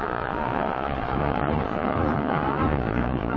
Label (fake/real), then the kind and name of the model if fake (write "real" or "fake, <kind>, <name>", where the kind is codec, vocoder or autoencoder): fake, vocoder, Vocos